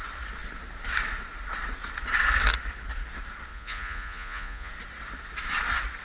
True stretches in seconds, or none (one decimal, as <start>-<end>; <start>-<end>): 0.0-3.5; 4.7-6.0

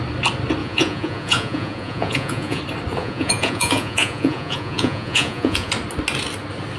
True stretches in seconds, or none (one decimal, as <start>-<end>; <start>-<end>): 0.0-0.6; 2.6-3.0; 5.7-6.8

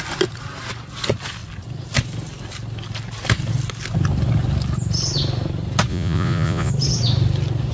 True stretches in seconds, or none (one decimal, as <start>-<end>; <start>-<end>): 0.0-5.9; 6.7-7.7

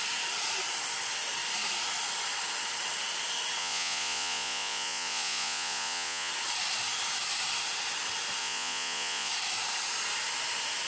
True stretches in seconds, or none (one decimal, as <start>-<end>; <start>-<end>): 0.0-3.6; 6.3-8.4; 9.3-10.9